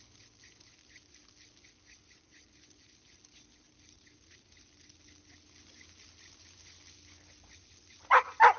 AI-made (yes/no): no